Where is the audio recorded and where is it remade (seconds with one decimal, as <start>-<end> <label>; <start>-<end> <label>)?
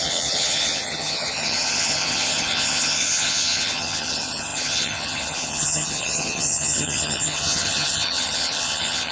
0.0-9.1 remade